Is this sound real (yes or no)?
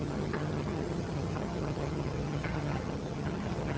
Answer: no